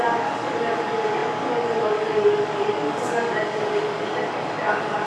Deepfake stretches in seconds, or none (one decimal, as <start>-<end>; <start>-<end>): 0.0-5.1